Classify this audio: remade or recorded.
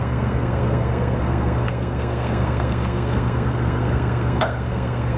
remade